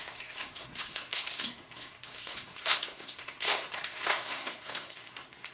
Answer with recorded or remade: remade